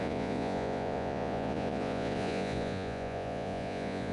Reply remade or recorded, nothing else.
remade